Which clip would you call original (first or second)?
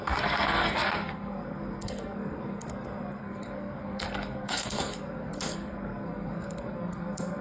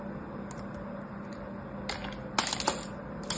second